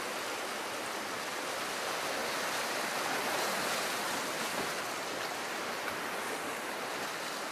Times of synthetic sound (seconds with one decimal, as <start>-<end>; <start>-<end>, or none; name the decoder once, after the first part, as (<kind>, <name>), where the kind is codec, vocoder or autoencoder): none